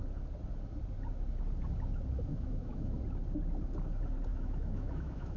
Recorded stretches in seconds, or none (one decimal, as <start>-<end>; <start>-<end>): 0.0-2.3; 3.0-4.3

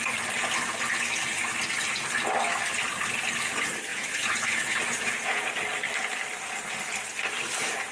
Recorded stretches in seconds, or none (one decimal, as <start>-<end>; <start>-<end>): 0.0-3.9; 5.6-7.9

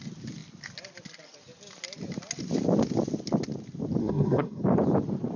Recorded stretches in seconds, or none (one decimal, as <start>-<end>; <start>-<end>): 0.0-4.0; 4.6-5.4

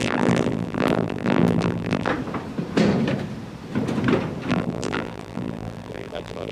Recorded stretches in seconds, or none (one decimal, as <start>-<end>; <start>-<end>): 2.1-4.5

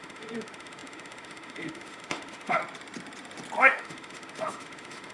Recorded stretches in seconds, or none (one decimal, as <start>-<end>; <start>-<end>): 2.6-3.6

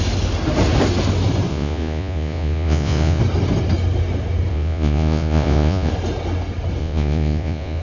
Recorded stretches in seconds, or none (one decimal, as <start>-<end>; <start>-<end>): 0.0-1.5; 3.2-4.5; 5.9-6.8

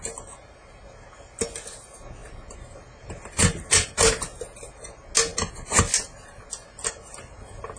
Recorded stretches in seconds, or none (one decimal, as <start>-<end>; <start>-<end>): 0.0-7.8

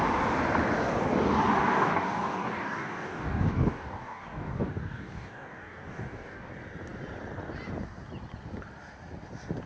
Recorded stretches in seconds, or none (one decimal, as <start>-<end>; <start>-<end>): 0.0-1.6; 6.5-9.7